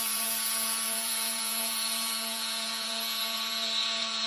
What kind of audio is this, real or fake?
fake